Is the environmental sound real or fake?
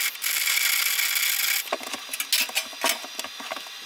real